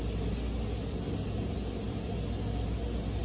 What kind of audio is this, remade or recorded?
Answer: recorded